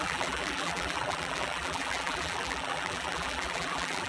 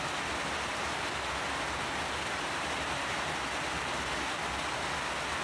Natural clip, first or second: second